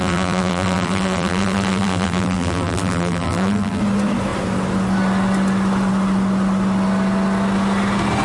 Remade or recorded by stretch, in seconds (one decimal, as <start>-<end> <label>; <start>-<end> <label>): 0.0-3.8 remade; 3.8-8.2 recorded

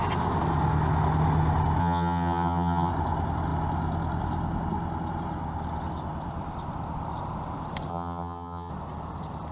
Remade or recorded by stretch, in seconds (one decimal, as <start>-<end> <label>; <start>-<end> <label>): 0.0-1.8 recorded; 1.8-2.9 remade; 2.9-7.9 recorded; 7.9-8.7 remade; 8.7-9.5 recorded